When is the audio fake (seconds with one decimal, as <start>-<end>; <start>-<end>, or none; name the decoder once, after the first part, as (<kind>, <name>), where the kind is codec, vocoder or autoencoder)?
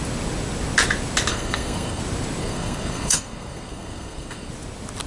1.3-2.0 (codec, SNAC); 2.4-4.5